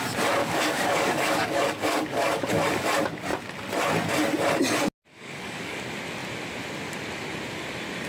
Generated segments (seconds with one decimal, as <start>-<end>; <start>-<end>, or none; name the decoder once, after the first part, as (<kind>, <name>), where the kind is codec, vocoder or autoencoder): 0.4-2.6 (codec, DAC); 5.1-5.8